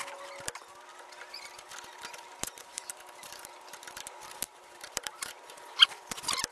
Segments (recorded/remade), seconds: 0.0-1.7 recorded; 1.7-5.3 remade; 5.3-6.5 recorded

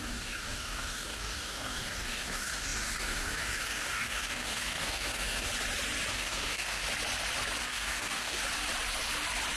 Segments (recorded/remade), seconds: 0.0-5.5 remade; 5.5-6.1 recorded; 6.1-6.8 remade; 6.8-7.6 recorded; 7.6-8.4 remade; 8.4-9.6 recorded

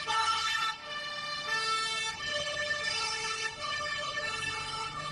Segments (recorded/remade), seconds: 0.0-0.8 remade; 0.8-2.1 recorded; 2.1-5.1 remade

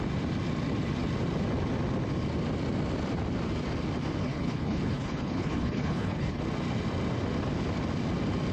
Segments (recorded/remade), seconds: 0.0-4.2 recorded; 4.2-6.4 remade; 6.4-8.5 recorded

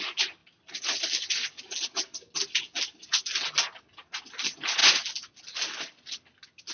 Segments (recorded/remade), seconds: 0.0-6.7 recorded